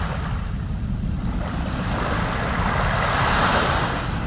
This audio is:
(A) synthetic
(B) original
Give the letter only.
B